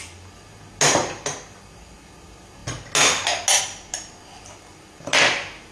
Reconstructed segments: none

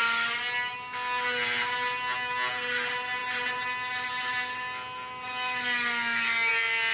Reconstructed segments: none

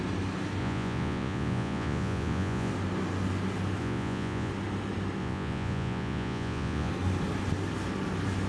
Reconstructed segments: 0.6-2.7; 3.8-4.5; 5.2-6.9

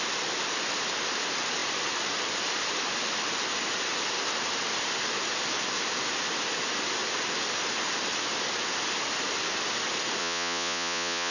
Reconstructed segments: 10.2-11.3